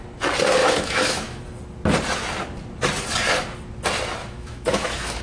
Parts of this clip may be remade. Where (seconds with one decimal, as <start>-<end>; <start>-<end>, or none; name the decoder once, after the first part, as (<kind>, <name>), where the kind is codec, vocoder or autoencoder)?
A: 0.6-1.4 (autoencoder, DAC-VAE); 4.2-5.2